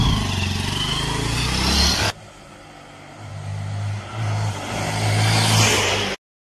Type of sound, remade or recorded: recorded